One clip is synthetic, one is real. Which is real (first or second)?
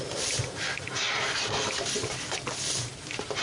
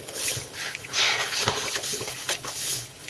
first